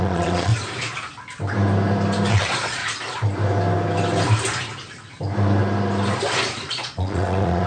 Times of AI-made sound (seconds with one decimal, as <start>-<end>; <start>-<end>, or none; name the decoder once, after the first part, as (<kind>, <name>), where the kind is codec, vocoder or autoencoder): 0.0-0.5 (vocoder, Vocos); 2.3-2.8; 6.7-7.7